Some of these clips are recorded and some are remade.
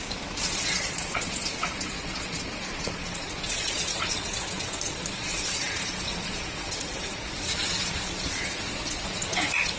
remade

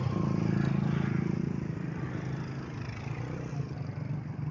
recorded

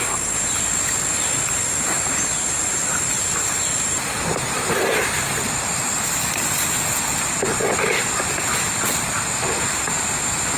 recorded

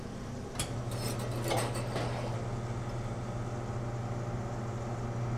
recorded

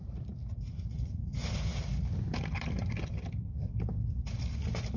remade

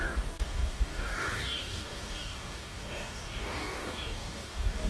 remade